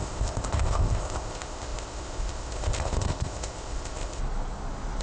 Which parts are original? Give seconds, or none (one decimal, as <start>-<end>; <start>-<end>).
4.2-5.0